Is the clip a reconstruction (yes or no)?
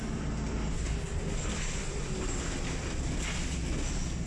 no